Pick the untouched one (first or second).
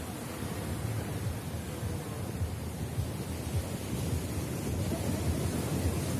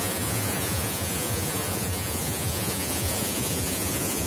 first